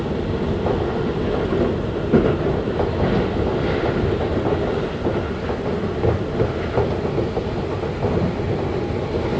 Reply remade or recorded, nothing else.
recorded